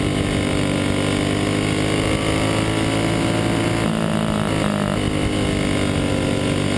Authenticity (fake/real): real